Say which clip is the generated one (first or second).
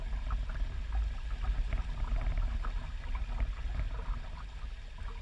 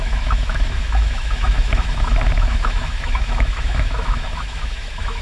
second